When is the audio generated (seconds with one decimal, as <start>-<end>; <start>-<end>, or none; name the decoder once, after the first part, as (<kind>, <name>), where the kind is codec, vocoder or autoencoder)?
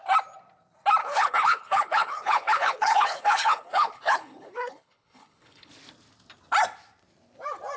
1.0-5.7 (codec, HILCodec)